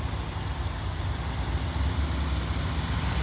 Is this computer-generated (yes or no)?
no